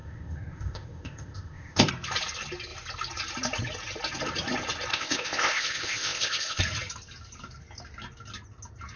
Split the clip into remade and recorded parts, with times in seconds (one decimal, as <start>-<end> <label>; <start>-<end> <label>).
0.0-1.9 remade; 1.9-4.9 recorded; 4.9-6.6 remade; 6.6-9.0 recorded